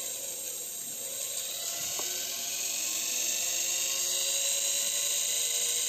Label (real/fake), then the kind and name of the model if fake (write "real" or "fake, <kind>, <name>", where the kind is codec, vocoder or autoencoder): real